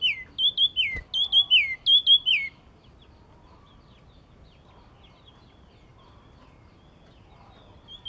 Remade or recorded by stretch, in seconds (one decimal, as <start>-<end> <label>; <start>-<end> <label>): 0.0-8.1 recorded